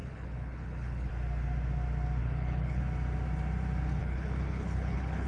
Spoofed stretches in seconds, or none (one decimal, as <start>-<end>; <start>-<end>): 0.0-1.1; 2.2-2.8; 4.0-5.3